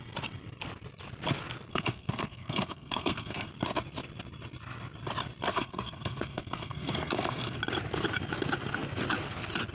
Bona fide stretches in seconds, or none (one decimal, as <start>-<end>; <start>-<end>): 0.0-1.7; 3.5-5.5; 7.6-9.7